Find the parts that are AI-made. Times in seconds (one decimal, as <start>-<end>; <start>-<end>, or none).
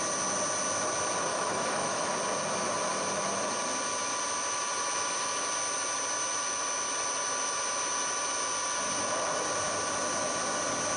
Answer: 1.3-2.1